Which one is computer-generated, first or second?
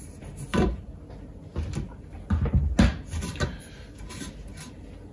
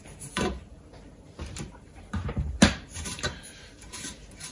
second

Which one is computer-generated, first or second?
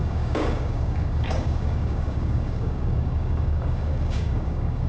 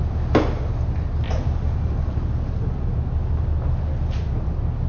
first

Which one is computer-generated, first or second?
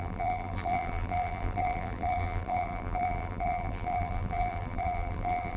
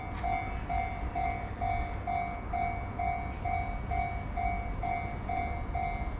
first